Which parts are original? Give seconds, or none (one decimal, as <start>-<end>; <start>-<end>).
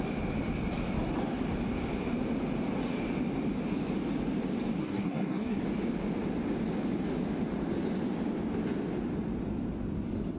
0.0-4.8; 5.6-10.4